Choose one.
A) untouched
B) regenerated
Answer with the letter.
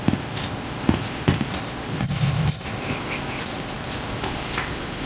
B